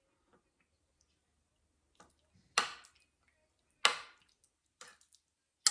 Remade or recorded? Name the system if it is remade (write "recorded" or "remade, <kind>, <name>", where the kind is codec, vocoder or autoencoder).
recorded